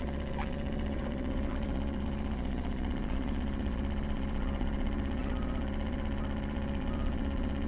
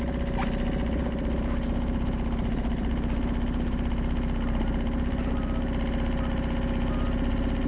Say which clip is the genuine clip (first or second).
second